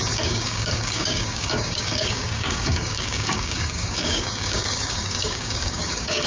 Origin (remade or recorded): remade